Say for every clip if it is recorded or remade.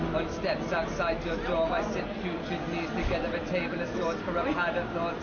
recorded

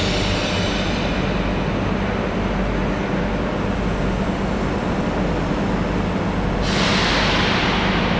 recorded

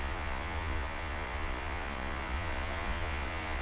remade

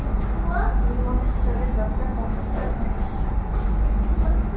recorded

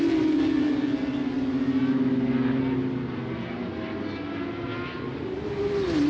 recorded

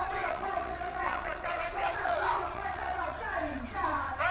remade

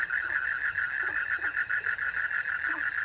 recorded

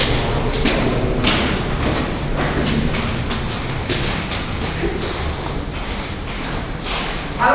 recorded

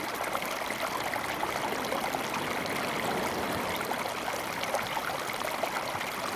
recorded